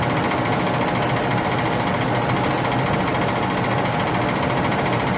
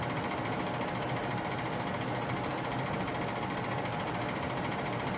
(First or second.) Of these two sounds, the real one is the first